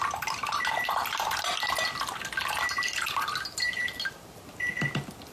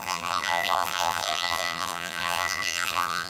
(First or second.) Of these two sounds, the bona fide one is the first